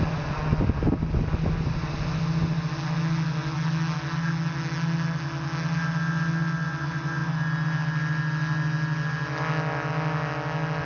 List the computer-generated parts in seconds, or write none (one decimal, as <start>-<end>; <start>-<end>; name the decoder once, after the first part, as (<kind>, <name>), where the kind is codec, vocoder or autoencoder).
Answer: none